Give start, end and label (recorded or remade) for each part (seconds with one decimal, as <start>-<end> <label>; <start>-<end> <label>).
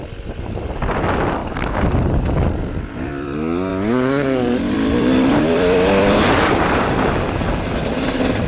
0.0-1.4 recorded; 1.4-3.1 remade; 3.1-3.7 recorded; 3.7-6.9 remade; 6.9-8.5 recorded